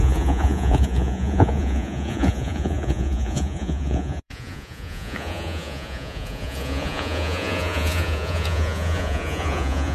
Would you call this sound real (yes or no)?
no